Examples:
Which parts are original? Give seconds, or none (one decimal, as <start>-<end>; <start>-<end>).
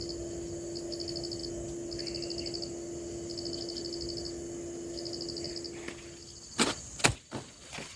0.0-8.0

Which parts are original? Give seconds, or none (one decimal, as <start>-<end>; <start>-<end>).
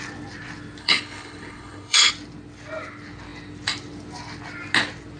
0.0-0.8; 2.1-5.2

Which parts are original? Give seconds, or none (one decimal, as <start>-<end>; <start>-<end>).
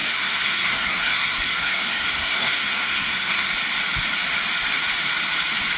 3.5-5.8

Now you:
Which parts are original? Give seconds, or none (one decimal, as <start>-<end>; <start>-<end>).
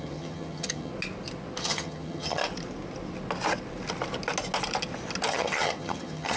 0.9-1.6; 2.4-5.3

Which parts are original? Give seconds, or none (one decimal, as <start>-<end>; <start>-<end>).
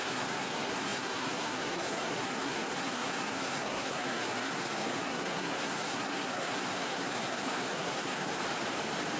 8.3-9.2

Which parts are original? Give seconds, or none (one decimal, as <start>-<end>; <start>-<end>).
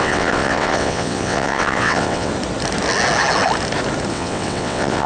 2.3-4.1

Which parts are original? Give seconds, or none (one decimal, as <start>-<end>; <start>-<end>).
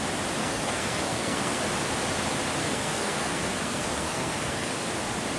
0.0-0.4; 1.6-2.6; 4.9-5.4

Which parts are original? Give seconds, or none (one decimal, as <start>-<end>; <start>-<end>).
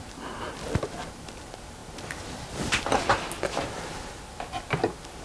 0.0-5.2